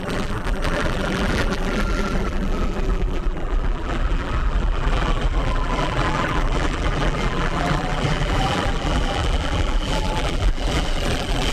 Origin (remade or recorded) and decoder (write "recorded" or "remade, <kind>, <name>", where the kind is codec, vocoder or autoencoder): remade, vocoder, BigVGAN v2